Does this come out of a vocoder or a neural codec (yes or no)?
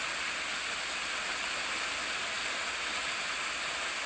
no